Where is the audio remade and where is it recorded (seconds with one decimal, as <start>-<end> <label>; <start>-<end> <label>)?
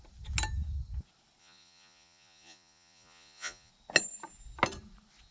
0.0-1.4 recorded; 1.4-3.7 remade; 3.7-5.3 recorded